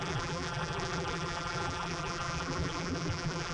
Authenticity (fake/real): fake